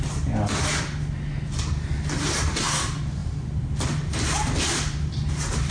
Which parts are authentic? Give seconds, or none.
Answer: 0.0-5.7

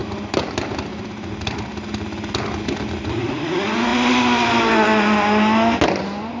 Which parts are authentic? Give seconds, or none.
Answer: 0.0-6.4

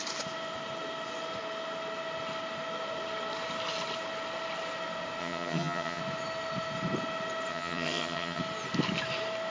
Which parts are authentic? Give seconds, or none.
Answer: 0.0-5.2; 6.0-7.5; 8.4-9.5

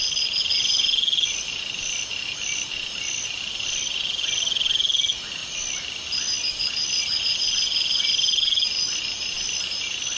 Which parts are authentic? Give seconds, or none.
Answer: 0.0-10.2

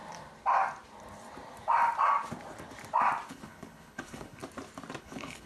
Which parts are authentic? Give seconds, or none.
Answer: 0.0-3.3; 4.4-5.0

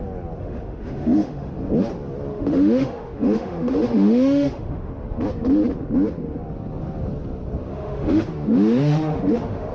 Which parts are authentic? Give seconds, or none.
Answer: 0.0-0.4; 1.5-2.3; 4.9-7.7

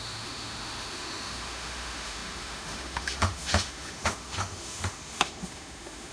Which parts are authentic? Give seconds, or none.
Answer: none